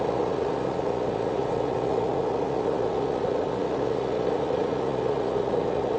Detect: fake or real fake